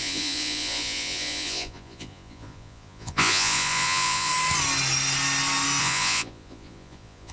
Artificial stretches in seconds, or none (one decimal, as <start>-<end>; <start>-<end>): 0.0-4.3; 5.8-7.3